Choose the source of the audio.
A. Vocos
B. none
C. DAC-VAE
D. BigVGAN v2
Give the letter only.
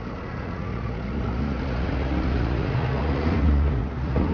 A